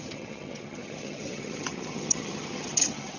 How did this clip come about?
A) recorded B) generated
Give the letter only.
B